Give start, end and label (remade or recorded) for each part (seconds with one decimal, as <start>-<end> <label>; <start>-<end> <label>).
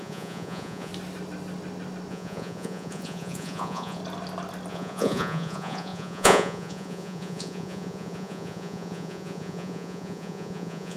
0.0-0.9 remade; 0.9-2.1 recorded; 2.1-4.0 remade; 4.0-4.7 recorded; 4.7-11.0 remade